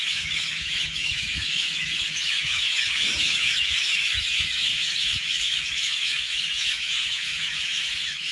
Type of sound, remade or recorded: remade